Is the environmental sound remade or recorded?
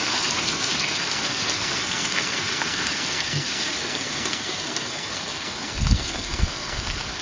remade